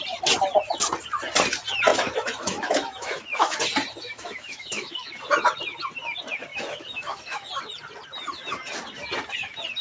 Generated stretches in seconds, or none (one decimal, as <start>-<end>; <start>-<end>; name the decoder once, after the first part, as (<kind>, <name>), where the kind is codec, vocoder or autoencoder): 1.9-3.6 (autoencoder, DAC-VAE); 4.0-5.1; 6.5-7.5